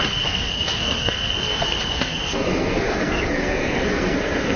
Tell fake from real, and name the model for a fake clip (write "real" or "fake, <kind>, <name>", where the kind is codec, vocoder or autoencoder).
fake, codec, SNAC